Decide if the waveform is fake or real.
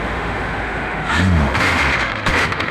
fake